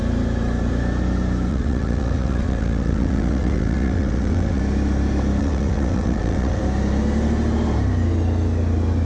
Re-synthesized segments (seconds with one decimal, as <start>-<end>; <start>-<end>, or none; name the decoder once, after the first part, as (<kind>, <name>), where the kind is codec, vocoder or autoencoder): 1.5-4.6 (vocoder, WaveNeXt); 5.4-6.6